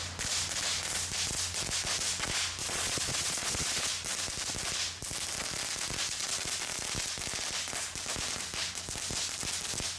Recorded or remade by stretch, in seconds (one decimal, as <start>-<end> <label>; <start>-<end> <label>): 0.0-2.6 recorded; 2.6-3.9 remade; 3.9-10.0 recorded

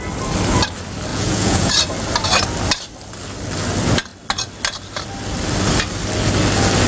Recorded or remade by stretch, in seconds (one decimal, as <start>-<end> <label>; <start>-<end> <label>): 0.0-1.1 recorded; 1.1-1.7 remade; 1.7-6.9 recorded